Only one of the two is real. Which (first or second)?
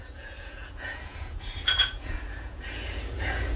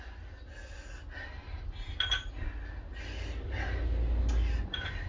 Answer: second